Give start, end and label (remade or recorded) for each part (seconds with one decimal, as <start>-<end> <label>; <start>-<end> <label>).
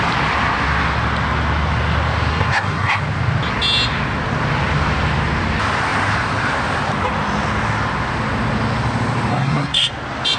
0.0-2.3 recorded; 2.3-3.0 remade; 3.0-9.3 recorded; 9.3-9.9 remade; 9.9-10.4 recorded